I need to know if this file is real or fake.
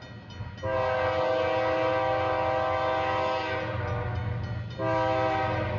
real